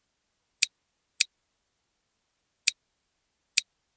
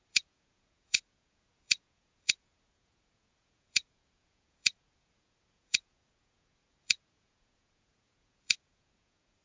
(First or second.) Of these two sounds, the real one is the first